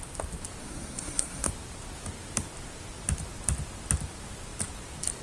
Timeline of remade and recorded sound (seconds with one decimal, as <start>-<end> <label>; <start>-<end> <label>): 0.0-0.6 recorded; 0.6-1.5 remade; 1.5-5.2 recorded